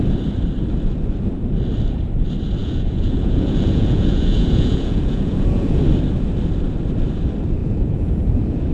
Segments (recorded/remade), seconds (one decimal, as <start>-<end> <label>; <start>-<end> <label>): 0.0-2.6 recorded; 2.6-5.8 remade; 5.8-7.6 recorded; 7.6-8.7 remade